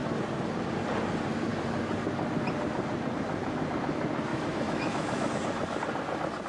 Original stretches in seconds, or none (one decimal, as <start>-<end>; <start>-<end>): 0.0-4.3; 5.3-6.5